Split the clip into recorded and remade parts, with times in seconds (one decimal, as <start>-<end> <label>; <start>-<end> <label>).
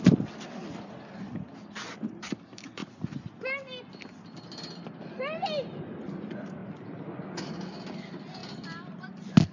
0.0-9.5 recorded